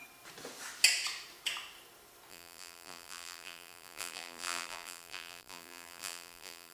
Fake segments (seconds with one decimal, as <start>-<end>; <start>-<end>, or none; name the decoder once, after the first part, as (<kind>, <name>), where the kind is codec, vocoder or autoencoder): 2.3-6.7 (vocoder, BigVGAN v2)